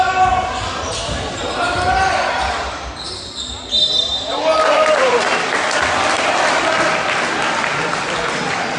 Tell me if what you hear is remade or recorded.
recorded